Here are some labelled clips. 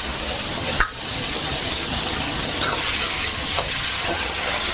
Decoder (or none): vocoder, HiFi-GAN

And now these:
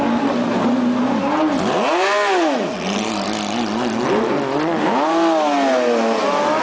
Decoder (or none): none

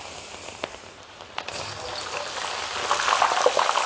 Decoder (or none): none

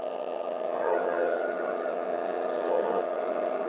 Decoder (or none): vocoder, HiFi-GAN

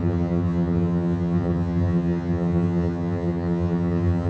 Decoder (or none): vocoder, HiFi-GAN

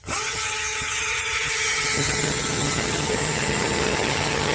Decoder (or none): vocoder, HiFi-GAN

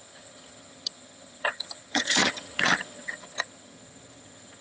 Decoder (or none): vocoder, HiFi-GAN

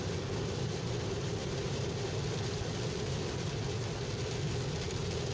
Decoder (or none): none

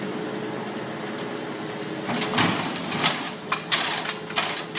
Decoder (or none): none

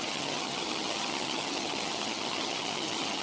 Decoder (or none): vocoder, HiFi-GAN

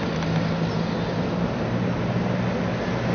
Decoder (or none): none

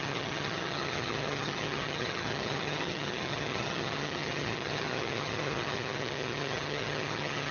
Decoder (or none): vocoder, HiFi-GAN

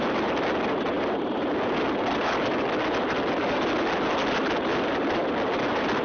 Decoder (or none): none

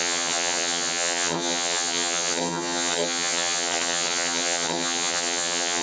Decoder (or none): vocoder, HiFi-GAN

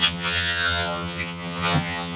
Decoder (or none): vocoder, HiFi-GAN